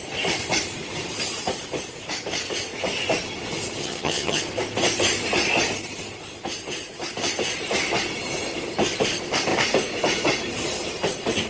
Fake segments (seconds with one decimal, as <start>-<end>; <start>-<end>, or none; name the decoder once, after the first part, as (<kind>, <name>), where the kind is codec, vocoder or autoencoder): 3.8-4.4 (vocoder, HiFi-GAN)